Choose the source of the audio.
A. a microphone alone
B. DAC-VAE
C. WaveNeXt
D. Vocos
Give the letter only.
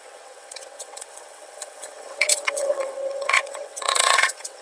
C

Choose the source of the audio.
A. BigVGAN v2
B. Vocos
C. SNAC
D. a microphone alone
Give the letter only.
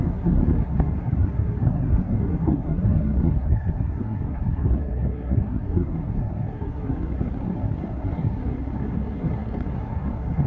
C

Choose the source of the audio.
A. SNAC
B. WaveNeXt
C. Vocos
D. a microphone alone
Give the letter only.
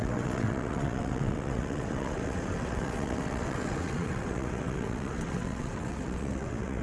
B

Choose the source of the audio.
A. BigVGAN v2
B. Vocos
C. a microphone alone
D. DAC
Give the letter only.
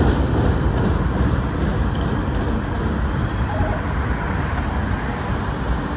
C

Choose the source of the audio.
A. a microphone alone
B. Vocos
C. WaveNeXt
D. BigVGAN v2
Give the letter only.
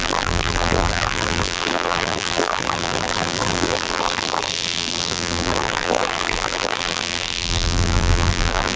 D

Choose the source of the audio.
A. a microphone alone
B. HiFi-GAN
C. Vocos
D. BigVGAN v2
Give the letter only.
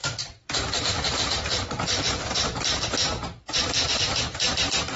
D